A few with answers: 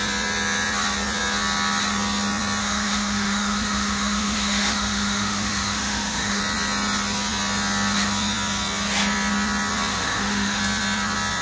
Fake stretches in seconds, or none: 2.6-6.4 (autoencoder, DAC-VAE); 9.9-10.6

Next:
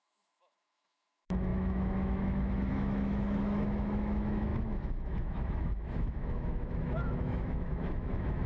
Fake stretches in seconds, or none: 0.0-8.5 (autoencoder, DAC-VAE)

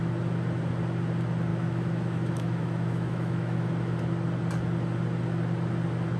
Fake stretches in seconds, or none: 1.5-3.7 (autoencoder, DAC-VAE)